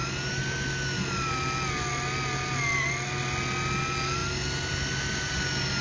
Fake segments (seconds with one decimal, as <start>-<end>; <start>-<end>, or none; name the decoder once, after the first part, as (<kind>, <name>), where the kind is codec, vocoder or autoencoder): none